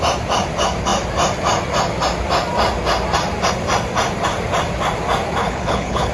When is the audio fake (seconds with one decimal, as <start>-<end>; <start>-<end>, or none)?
5.4-6.1